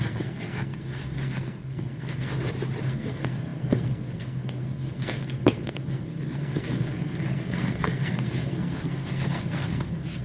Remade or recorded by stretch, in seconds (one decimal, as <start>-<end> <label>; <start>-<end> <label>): 0.0-2.3 remade; 2.3-2.8 recorded; 2.8-10.2 remade